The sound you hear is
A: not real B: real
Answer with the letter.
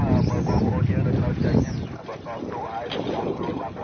B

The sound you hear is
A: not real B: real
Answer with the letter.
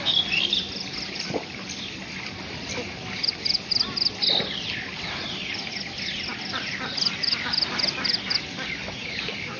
B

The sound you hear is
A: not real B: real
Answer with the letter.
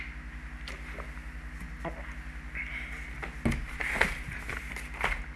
B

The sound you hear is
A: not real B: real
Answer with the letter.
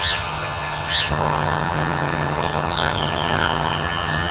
A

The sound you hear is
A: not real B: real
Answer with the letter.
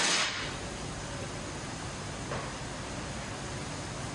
B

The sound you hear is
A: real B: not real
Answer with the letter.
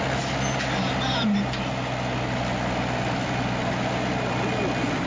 A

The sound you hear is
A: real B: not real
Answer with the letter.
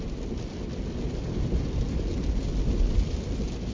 A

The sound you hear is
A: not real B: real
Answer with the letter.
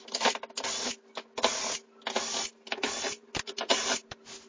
B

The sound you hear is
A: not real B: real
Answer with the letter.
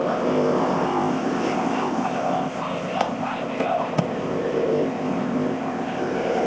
A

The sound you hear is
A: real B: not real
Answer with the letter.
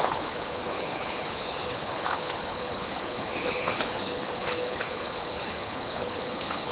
B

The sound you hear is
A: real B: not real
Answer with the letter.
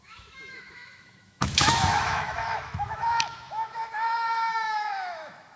B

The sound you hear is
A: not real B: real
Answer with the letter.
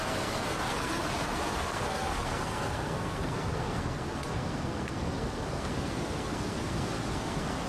A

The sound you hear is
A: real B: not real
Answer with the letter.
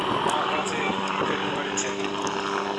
A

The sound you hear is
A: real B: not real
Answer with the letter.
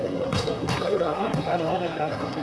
B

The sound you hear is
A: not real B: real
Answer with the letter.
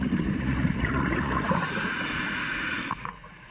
A